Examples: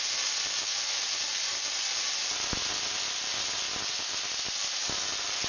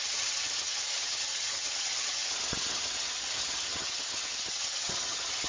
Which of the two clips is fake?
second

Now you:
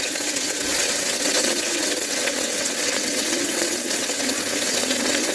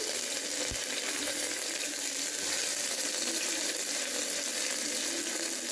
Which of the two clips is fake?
first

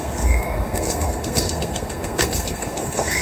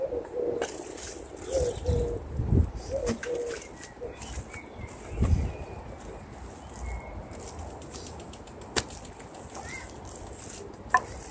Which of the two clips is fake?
first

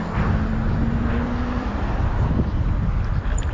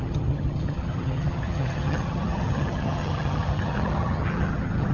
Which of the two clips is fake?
second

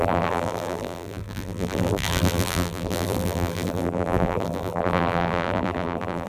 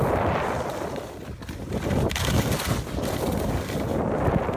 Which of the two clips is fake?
first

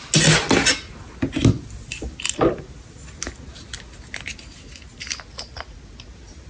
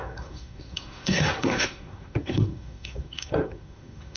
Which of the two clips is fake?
second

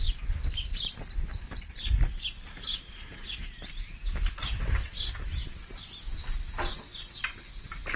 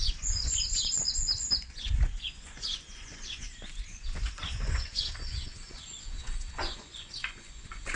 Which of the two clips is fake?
second